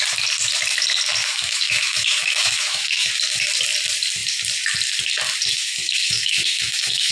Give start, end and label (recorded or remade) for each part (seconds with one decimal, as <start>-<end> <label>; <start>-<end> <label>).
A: 0.0-1.2 recorded; 1.2-3.1 remade; 3.1-5.5 recorded; 5.5-7.1 remade